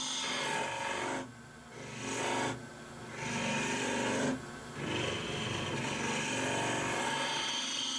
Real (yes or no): yes